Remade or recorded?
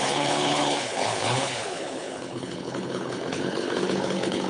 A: remade